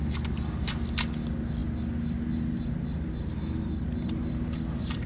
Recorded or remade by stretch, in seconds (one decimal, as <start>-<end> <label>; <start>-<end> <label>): 0.0-5.1 recorded